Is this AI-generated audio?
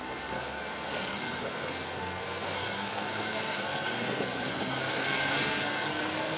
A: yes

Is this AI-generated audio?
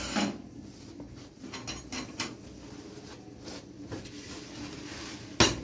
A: no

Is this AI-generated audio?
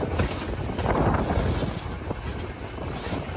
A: no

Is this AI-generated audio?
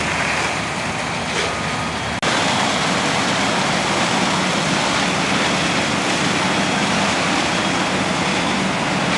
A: no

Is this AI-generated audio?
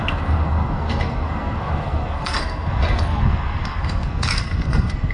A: yes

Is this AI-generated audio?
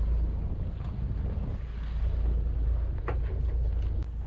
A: no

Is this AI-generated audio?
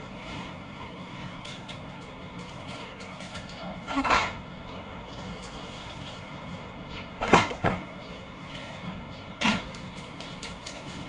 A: yes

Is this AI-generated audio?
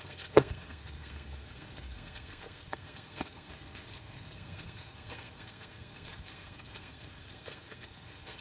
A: yes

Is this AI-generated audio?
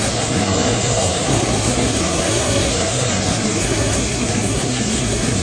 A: yes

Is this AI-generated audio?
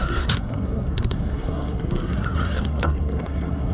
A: yes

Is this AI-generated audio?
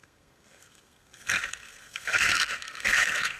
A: yes